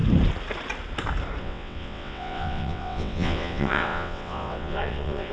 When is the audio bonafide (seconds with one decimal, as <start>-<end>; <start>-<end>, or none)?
0.0-1.4